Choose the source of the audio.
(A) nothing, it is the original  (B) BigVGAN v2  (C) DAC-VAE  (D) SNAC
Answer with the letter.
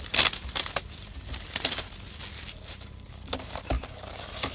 A